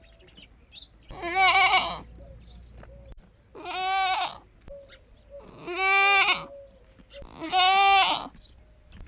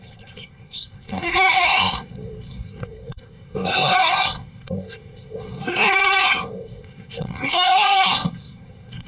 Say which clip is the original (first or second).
first